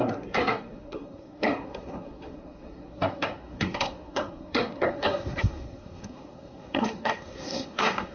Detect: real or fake fake